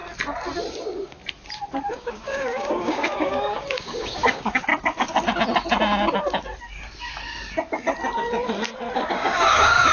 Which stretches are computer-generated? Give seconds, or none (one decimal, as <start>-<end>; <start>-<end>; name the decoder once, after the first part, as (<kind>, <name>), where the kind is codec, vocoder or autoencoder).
0.7-1.2 (codec, DAC); 1.9-4.7; 9.1-9.9

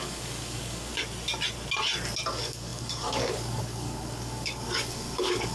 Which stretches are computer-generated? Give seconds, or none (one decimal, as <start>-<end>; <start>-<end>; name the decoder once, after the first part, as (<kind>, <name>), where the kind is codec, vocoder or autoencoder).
0.0-0.9 (codec, DAC); 2.3-5.5

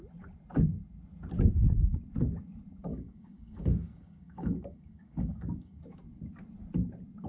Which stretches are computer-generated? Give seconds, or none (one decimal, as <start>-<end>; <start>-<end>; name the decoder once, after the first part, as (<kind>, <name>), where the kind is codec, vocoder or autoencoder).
2.9-5.8 (codec, DAC)

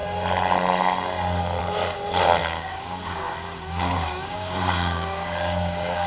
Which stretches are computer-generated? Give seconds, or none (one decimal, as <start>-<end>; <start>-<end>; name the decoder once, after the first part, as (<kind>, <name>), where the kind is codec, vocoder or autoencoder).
2.4-6.1 (codec, DAC)

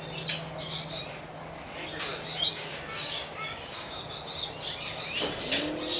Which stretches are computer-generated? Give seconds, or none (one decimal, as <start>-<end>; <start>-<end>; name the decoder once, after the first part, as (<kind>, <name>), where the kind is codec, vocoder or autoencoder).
2.5-4.0 (codec, DAC)

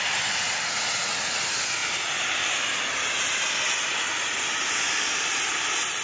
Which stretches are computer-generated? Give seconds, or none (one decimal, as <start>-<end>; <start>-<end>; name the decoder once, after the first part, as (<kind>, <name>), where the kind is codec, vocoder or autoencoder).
none